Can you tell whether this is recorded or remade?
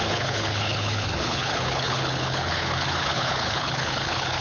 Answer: remade